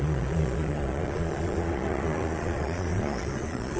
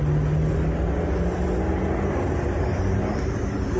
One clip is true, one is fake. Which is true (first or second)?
second